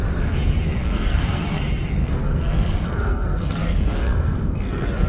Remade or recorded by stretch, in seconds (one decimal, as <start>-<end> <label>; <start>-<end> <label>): 0.0-0.8 recorded; 0.8-1.6 remade; 1.6-2.0 recorded; 2.0-5.1 remade